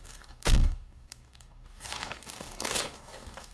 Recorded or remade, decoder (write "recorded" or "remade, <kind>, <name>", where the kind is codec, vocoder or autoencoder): remade, codec, DAC